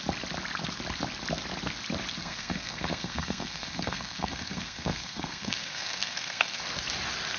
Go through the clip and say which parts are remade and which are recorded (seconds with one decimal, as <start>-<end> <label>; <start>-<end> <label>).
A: 0.0-2.2 recorded; 2.2-6.6 remade; 6.6-7.4 recorded